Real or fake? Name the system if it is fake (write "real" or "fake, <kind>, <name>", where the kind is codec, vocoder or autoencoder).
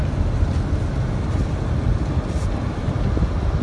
real